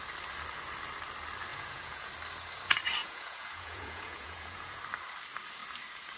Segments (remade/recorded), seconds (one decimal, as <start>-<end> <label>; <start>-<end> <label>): 0.0-1.5 recorded; 1.5-2.1 remade; 2.1-3.0 recorded; 3.0-4.8 remade; 4.8-6.2 recorded